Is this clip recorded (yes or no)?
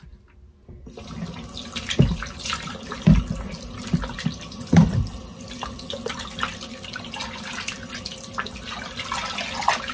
yes